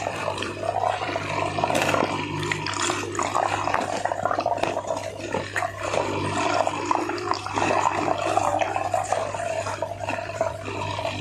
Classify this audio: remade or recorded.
remade